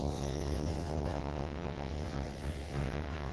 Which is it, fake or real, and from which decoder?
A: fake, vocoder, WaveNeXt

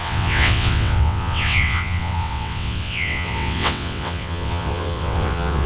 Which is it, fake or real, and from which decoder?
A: fake, vocoder, WaveNeXt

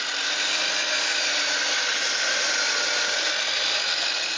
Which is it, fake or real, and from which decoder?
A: real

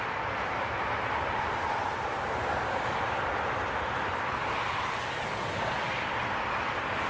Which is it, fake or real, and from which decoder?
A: real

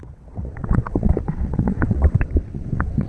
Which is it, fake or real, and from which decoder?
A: fake, vocoder, WaveNeXt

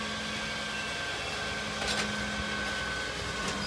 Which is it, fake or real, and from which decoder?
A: real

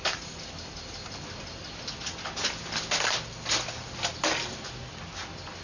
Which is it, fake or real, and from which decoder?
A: real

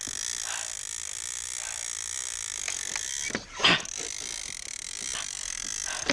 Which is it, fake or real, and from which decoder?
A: real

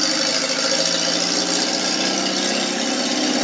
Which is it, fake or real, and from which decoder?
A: real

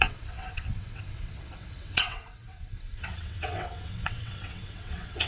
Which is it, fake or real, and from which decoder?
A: fake, vocoder, WaveNeXt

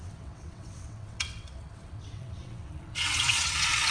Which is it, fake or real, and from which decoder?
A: fake, vocoder, WaveNeXt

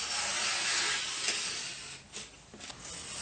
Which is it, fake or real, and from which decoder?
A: real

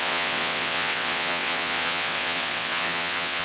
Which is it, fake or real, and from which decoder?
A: fake, vocoder, WaveNeXt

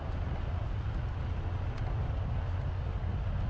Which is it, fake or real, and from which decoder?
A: real